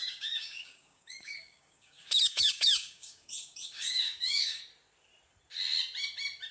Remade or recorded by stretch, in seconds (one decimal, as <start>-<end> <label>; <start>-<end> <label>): 0.0-4.6 remade; 4.6-6.5 recorded